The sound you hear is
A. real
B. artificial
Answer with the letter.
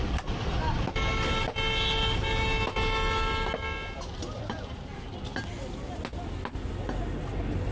A